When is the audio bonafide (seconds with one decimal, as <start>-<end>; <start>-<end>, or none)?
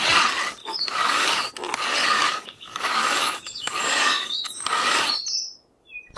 0.0-0.6; 1.5-2.0; 5.1-6.2